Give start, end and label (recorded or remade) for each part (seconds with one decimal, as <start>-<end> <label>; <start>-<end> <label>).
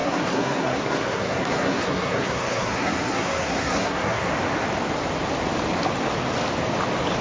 0.0-4.3 remade; 4.3-7.2 recorded